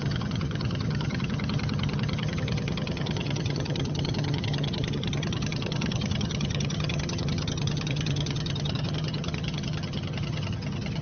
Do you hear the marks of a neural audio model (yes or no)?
yes